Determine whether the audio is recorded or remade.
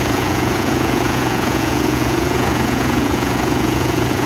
remade